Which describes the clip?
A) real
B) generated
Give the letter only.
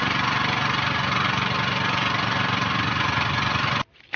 A